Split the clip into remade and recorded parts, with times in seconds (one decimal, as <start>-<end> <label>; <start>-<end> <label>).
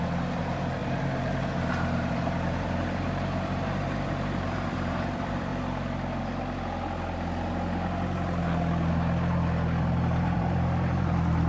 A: 0.0-5.5 remade; 5.5-9.8 recorded; 9.8-11.5 remade